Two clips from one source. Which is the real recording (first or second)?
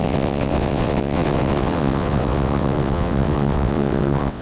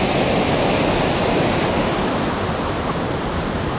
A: second